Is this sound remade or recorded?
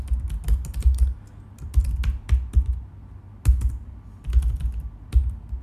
recorded